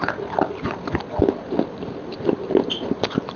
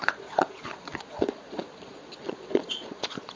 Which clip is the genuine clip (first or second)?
first